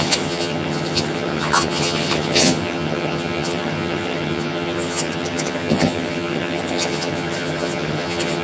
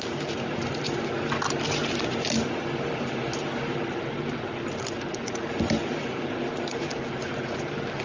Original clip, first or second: second